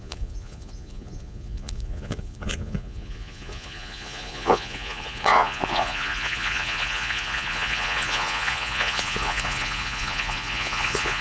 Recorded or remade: remade